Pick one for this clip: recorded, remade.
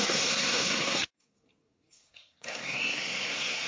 remade